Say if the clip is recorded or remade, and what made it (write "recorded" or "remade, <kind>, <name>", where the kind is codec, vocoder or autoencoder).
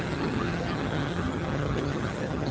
remade, vocoder, HiFi-GAN